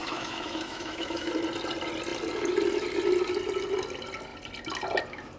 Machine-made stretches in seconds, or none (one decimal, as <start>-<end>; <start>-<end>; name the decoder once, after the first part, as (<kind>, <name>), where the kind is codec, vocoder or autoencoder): 0.0-1.3 (autoencoder, DAC-VAE)